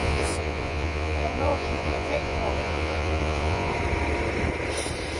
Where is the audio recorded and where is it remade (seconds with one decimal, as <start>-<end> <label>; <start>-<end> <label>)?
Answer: 0.0-3.7 remade; 3.7-5.2 recorded